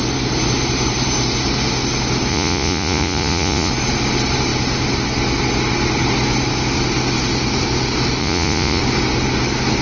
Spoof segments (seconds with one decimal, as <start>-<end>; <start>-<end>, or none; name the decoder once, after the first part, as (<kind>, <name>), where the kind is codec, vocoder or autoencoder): 2.3-3.7 (vocoder, Vocos); 8.2-8.8